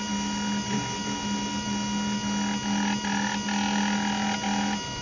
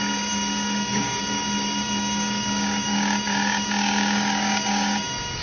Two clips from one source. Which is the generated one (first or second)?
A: second